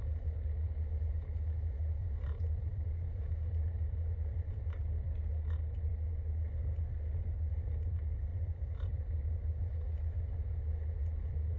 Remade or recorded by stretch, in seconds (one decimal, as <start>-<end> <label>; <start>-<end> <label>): 0.0-2.0 recorded; 2.0-4.6 remade; 4.6-8.3 recorded; 8.3-9.7 remade; 9.7-11.6 recorded